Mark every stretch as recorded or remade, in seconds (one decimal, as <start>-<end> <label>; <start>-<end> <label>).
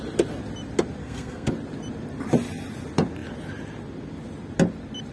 0.0-1.0 recorded; 1.0-1.5 remade; 1.5-5.1 recorded